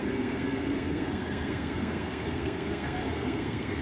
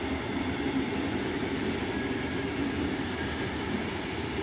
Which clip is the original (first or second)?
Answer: second